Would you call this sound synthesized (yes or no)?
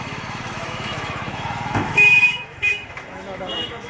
yes